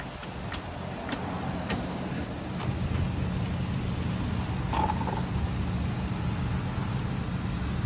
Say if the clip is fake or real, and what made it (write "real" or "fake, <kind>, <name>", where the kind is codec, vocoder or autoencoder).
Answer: real